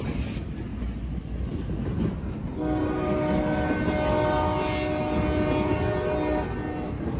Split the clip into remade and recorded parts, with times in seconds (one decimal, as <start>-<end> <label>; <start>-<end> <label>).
0.0-7.2 recorded